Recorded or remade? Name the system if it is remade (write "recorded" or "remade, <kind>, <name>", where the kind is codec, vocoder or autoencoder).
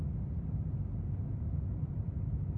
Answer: recorded